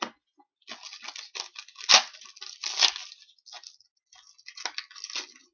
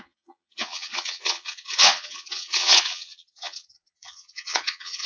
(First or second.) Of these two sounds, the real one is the first